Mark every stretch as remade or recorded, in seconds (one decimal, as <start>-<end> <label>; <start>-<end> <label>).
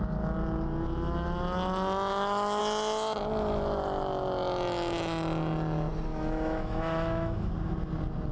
0.0-2.1 recorded; 2.1-2.6 remade; 2.6-6.1 recorded; 6.1-7.5 remade; 7.5-8.3 recorded